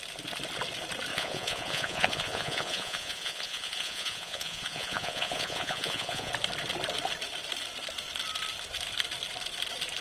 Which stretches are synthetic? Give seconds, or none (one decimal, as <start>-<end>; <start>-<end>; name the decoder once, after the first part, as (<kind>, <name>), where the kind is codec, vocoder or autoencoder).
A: 1.1-6.3 (vocoder, Vocos)